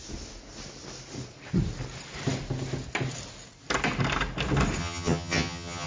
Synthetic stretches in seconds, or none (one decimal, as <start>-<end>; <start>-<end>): 4.8-5.9